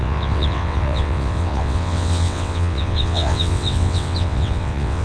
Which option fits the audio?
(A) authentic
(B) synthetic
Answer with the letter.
B